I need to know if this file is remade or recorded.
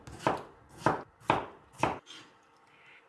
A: recorded